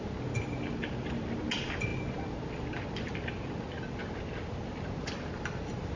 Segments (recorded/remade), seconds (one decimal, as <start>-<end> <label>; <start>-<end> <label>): 0.0-6.0 recorded